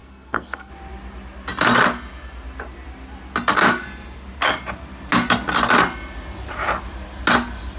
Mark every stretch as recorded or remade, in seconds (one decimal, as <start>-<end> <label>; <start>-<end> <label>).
0.0-0.7 remade; 0.7-7.8 recorded